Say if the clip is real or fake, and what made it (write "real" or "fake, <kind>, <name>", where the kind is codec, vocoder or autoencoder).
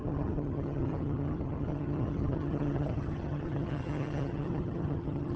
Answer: fake, vocoder, HiFi-GAN